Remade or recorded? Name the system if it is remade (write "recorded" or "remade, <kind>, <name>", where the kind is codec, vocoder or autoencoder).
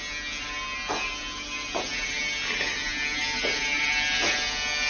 recorded